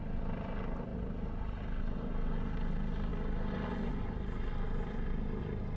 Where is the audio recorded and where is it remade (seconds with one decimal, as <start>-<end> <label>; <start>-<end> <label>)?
0.0-5.8 recorded